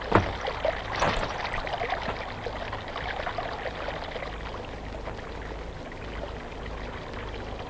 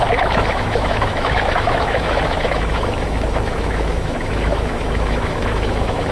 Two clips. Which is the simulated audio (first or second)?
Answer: second